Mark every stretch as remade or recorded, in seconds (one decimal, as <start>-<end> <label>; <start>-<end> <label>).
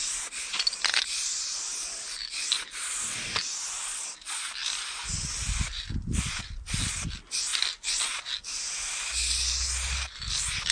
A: 0.0-10.7 recorded